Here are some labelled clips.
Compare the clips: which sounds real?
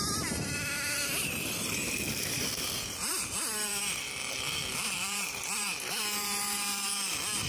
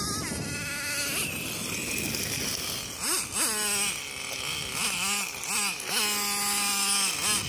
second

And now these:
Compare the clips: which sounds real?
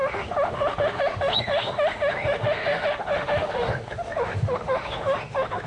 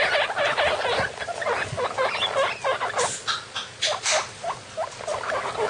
second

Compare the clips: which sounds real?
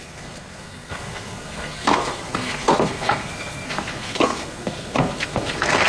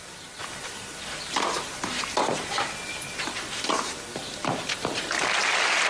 second